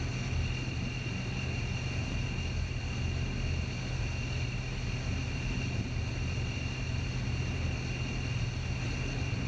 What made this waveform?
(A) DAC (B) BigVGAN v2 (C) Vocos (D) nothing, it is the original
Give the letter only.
D